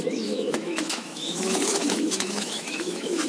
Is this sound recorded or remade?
remade